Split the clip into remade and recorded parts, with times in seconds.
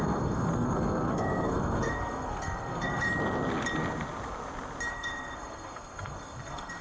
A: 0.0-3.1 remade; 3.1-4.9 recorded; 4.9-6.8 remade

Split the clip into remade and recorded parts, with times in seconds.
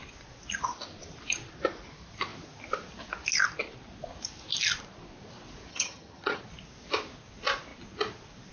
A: 0.0-5.7 recorded; 5.7-6.4 remade; 6.4-8.5 recorded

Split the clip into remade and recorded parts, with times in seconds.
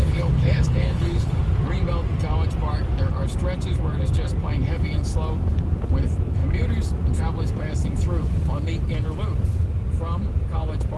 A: 0.0-1.4 remade; 1.4-11.0 recorded